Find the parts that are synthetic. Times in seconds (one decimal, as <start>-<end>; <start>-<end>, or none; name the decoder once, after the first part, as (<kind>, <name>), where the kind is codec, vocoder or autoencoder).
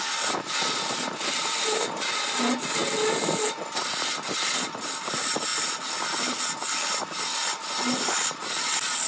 none